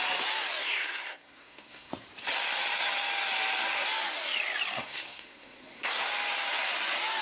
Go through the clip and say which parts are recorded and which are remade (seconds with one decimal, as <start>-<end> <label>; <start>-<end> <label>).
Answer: 0.0-0.6 recorded; 0.6-1.9 remade; 1.9-4.8 recorded; 4.8-6.1 remade; 6.1-7.2 recorded